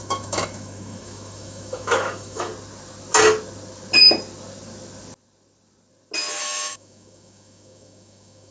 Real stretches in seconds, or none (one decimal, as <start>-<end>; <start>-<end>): 2.5-6.4